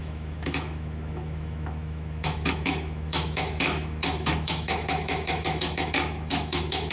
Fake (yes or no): yes